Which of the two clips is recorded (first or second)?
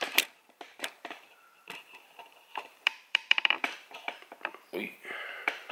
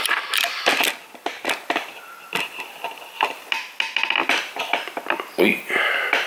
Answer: second